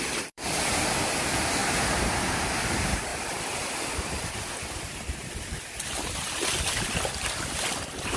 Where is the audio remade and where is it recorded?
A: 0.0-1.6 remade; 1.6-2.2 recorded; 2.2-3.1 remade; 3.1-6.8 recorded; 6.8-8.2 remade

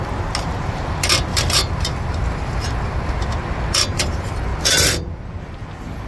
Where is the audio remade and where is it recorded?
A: 0.0-1.3 recorded; 1.3-2.7 remade; 2.7-6.1 recorded